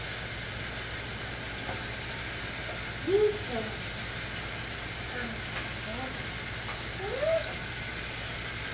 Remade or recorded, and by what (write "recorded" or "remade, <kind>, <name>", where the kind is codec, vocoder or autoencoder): recorded